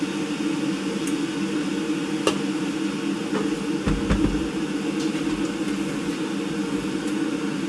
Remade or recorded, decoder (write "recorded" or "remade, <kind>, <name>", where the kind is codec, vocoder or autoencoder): recorded